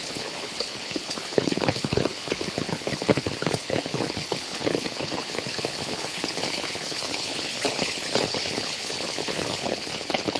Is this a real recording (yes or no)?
no